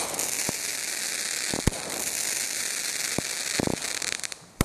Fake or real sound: real